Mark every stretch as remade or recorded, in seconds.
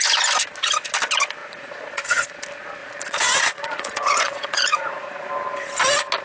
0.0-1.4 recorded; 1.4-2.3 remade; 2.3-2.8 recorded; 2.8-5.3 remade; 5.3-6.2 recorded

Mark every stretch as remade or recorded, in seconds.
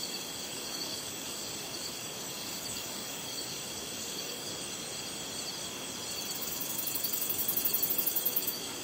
0.0-4.5 remade; 4.5-6.4 recorded; 6.4-7.4 remade; 7.4-7.9 recorded; 7.9-8.8 remade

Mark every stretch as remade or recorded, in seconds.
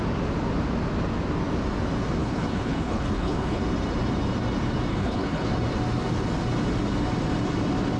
0.0-2.2 recorded; 2.2-3.6 remade; 3.6-4.9 recorded; 4.9-5.5 remade; 5.5-8.0 recorded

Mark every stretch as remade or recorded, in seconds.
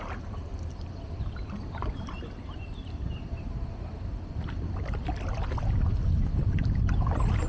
0.0-0.5 recorded; 0.5-3.5 remade; 3.5-4.1 recorded; 4.1-6.9 remade; 6.9-7.5 recorded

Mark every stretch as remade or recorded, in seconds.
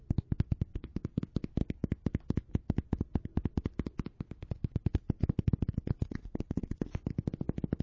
0.0-0.7 recorded; 0.7-1.2 remade; 1.2-4.8 recorded; 4.8-6.8 remade; 6.8-7.8 recorded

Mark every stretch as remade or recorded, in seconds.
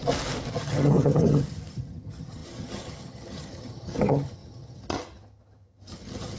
0.0-0.5 recorded; 0.5-6.4 remade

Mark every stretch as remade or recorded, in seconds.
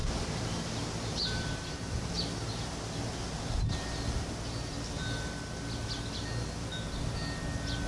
0.0-2.1 remade; 2.1-7.9 recorded